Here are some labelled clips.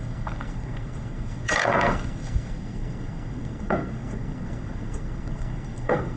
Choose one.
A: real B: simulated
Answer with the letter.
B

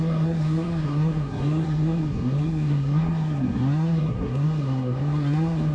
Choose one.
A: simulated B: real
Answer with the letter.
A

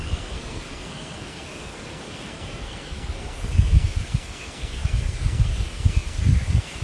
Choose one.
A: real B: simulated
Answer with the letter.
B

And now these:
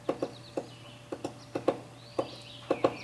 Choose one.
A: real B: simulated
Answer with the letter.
A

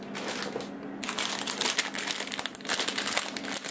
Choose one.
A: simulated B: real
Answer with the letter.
B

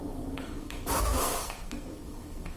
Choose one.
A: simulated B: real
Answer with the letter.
A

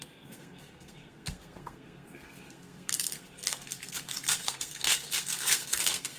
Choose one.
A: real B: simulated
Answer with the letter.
B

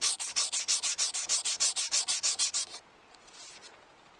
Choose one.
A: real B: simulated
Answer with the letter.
A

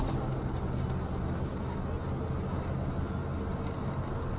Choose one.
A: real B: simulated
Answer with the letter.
A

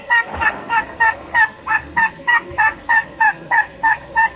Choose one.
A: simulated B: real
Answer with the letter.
A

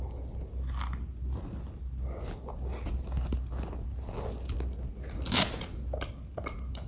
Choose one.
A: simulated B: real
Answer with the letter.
B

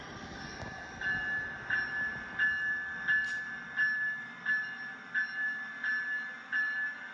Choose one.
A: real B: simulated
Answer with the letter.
A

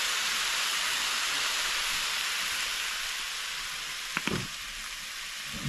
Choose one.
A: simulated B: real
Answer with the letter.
B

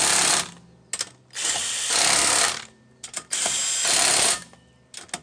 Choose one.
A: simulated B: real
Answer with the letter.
B